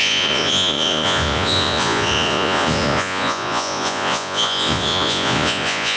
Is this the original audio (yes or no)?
no